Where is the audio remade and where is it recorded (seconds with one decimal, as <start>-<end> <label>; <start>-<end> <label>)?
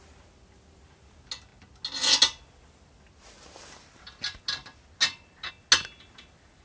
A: 0.0-6.6 recorded